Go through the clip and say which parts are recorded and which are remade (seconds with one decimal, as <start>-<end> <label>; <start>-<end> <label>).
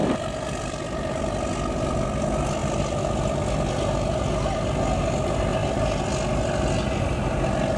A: 0.0-1.2 remade; 1.2-2.6 recorded; 2.6-3.7 remade; 3.7-7.8 recorded